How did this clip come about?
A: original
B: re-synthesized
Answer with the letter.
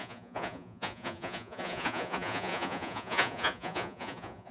B